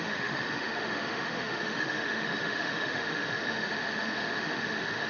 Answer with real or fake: fake